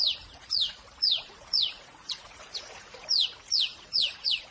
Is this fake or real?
fake